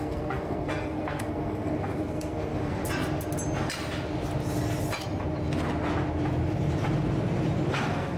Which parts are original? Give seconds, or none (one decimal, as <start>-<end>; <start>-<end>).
2.8-7.7

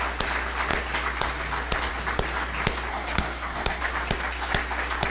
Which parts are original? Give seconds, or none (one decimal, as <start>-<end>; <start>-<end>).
0.0-2.9; 3.8-5.1